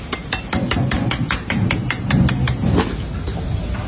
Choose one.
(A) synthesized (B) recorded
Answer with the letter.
B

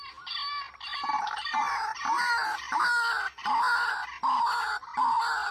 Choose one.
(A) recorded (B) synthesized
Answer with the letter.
A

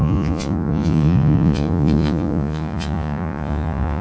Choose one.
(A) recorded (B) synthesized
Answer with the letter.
B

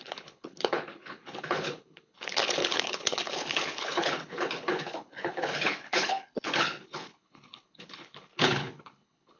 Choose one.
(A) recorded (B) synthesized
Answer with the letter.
B